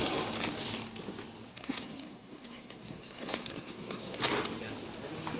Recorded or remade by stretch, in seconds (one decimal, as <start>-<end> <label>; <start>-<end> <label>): 0.0-1.5 recorded; 1.5-4.2 remade; 4.2-5.4 recorded